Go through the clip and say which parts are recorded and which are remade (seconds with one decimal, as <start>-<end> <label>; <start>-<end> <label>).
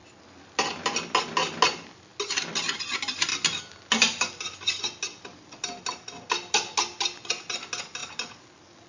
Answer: 0.0-8.9 recorded